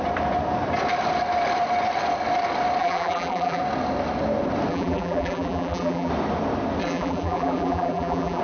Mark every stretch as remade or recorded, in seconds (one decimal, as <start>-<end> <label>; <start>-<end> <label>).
0.0-2.8 recorded; 2.8-3.6 remade; 3.6-4.7 recorded; 4.7-6.1 remade; 6.1-6.8 recorded; 6.8-8.4 remade